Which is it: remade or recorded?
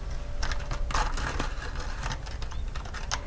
recorded